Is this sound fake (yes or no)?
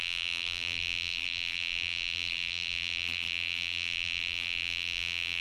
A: yes